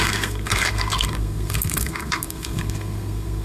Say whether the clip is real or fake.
fake